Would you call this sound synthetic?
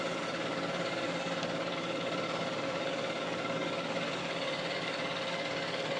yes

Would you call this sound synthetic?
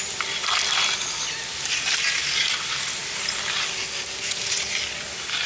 no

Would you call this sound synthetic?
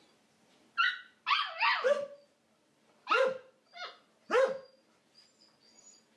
no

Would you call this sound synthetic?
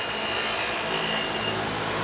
no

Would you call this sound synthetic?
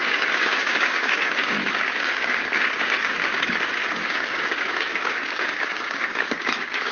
yes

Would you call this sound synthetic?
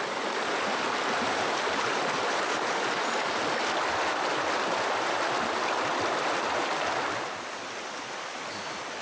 no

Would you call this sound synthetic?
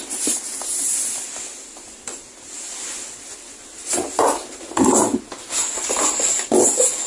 no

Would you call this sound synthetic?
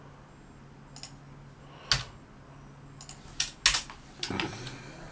no